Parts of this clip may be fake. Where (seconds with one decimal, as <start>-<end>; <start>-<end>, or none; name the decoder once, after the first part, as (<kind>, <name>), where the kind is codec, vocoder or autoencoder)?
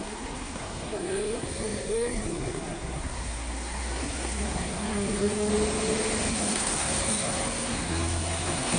0.0-5.5 (codec, SNAC); 6.3-8.8